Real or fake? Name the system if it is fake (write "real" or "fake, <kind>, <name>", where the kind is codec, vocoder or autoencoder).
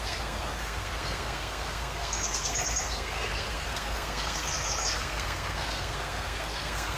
fake, codec, SNAC